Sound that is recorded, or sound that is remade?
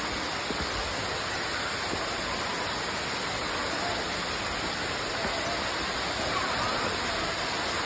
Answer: recorded